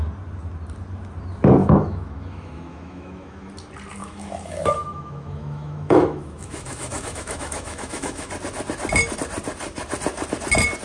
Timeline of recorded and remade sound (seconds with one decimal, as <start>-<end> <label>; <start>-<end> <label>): 0.0-1.6 recorded; 1.6-3.5 remade; 3.5-4.0 recorded; 4.0-8.3 remade; 8.3-10.8 recorded